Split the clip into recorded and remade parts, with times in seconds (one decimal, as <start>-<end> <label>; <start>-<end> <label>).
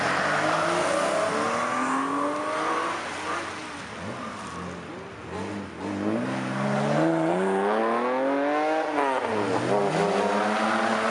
0.0-11.1 recorded